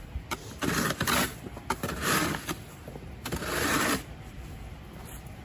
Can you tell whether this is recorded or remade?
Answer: recorded